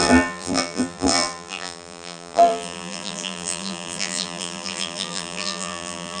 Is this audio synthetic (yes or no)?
yes